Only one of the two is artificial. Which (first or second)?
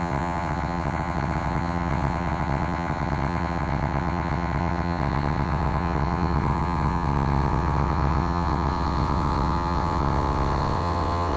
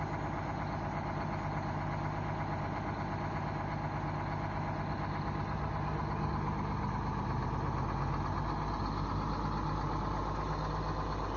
first